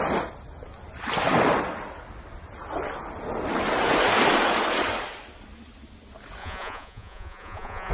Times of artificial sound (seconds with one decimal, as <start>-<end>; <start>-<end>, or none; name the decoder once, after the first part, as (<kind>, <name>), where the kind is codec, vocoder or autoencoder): 6.4-7.9 (vocoder, Vocos)